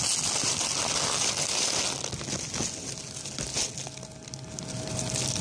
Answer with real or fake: real